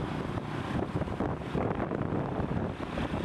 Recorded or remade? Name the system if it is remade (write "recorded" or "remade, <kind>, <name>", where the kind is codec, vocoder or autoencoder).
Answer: remade, vocoder, BigVGAN v2